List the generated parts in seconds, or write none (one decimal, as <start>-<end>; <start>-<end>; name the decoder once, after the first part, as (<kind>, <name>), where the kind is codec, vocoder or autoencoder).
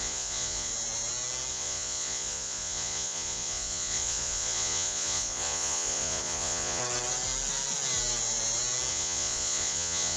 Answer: 0.0-0.7 (vocoder, Vocos); 1.5-6.8; 8.9-10.2